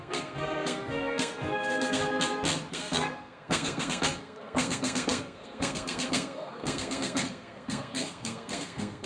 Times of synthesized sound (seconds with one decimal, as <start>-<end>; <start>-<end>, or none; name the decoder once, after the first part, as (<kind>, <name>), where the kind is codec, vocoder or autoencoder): 0.0-2.0 (codec, SNAC); 2.7-9.1